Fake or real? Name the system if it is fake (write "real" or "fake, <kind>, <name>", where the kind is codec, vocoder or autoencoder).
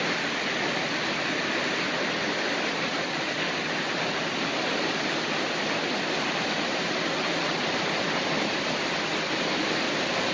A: real